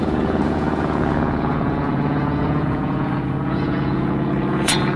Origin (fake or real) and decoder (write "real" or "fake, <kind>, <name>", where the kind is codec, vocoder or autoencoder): fake, vocoder, Vocos